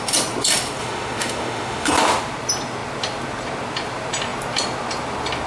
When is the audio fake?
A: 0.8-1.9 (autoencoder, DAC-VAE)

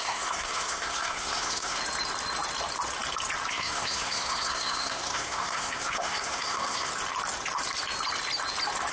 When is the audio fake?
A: 0.0-1.8 (codec, SNAC); 3.5-6.9

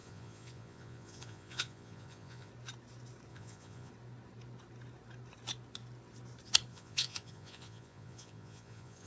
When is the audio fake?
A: 0.0-2.5 (vocoder, Vocos); 3.3-3.9; 6.7-9.1